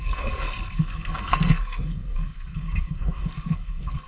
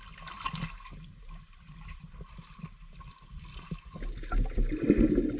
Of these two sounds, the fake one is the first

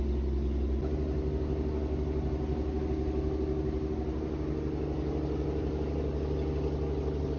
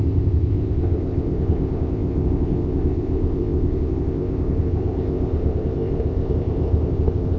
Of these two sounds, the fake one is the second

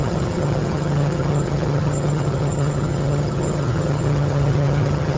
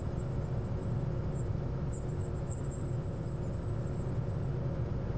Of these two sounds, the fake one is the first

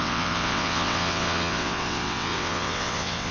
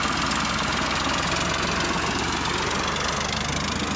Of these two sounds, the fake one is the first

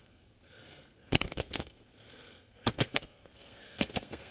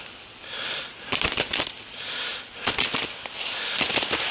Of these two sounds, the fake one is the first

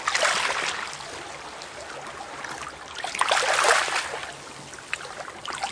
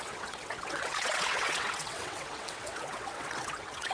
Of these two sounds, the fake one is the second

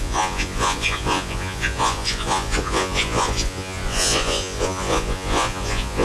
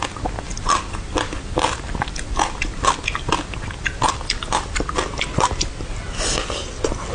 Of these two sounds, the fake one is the first